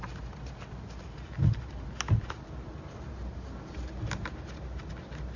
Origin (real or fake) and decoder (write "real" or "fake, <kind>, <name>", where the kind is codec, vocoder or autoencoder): real